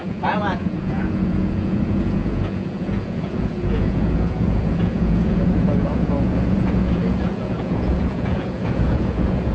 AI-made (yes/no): yes